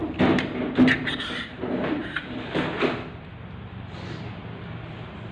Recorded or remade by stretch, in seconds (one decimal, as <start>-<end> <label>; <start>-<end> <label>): 0.0-2.0 recorded; 2.0-2.7 remade; 2.7-5.3 recorded